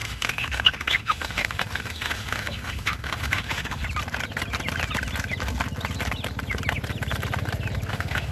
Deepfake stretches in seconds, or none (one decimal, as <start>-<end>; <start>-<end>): 0.0-3.8; 7.9-8.3